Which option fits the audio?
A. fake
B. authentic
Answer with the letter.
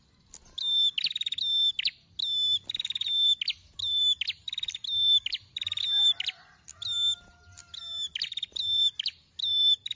B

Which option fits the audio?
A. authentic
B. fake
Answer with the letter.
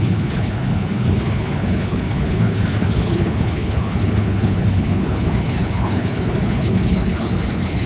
B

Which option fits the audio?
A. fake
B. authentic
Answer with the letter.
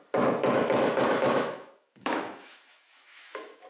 A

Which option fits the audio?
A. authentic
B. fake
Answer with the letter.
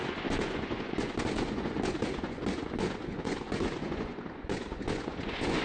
B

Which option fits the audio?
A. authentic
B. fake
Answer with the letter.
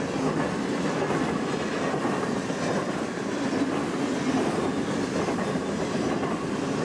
A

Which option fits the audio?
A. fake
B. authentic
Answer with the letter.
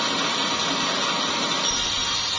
B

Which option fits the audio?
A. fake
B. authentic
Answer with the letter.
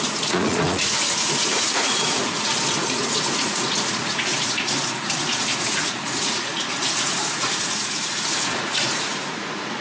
A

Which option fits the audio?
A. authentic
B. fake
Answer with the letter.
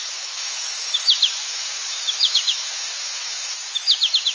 B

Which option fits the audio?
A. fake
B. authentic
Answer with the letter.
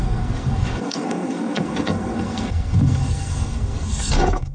A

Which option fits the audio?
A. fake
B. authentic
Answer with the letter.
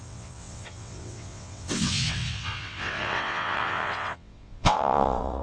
A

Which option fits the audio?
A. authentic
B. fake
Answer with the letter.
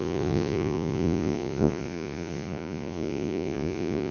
B